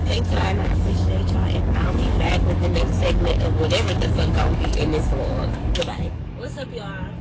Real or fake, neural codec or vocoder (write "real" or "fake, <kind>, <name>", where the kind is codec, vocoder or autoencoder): fake, codec, DAC